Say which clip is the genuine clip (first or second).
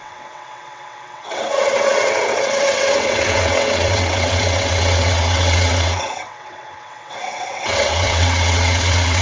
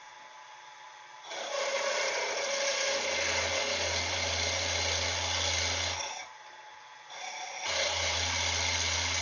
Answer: second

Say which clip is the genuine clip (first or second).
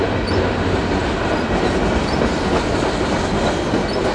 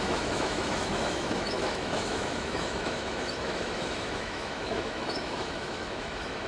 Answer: first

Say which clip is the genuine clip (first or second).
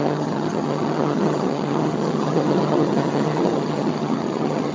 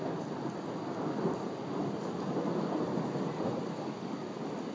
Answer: second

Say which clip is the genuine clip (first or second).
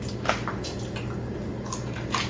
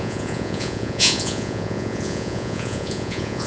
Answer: first